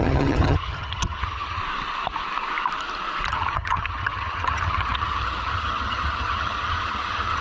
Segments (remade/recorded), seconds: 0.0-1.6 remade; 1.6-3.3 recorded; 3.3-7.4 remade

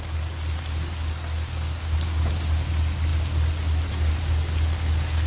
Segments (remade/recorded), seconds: 0.0-5.3 recorded

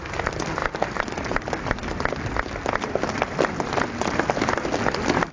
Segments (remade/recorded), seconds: 0.0-5.3 recorded

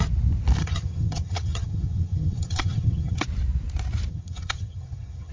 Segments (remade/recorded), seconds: 0.0-0.6 recorded; 0.6-3.2 remade; 3.2-4.1 recorded; 4.1-5.3 remade